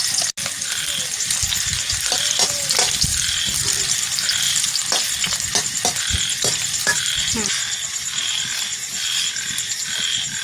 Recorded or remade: recorded